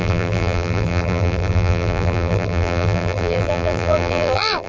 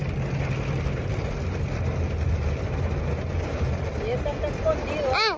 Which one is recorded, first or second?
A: second